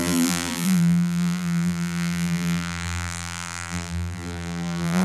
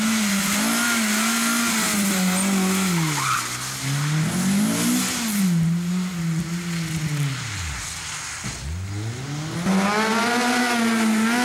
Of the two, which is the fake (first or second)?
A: first